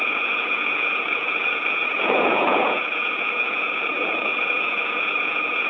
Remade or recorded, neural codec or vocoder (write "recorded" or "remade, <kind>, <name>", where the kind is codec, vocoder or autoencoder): remade, vocoder, Vocos